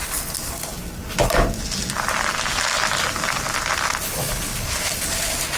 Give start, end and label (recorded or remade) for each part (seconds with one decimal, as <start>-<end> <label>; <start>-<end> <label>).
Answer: 0.0-5.6 recorded